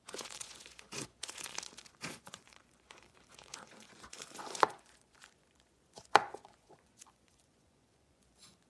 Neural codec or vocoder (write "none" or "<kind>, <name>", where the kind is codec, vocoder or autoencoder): vocoder, Vocos